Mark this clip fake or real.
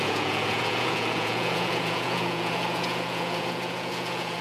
fake